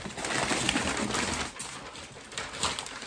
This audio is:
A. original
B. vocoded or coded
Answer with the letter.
A